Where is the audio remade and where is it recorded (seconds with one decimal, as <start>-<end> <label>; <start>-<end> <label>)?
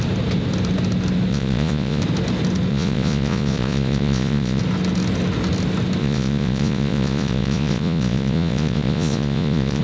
0.0-1.3 recorded; 1.3-2.0 remade; 2.0-2.7 recorded; 2.7-4.6 remade; 4.6-6.0 recorded; 6.0-9.8 remade